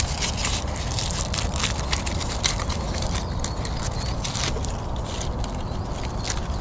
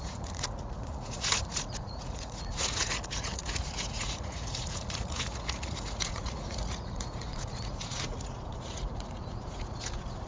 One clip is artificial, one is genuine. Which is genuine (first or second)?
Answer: first